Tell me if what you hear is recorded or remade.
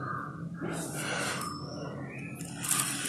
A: recorded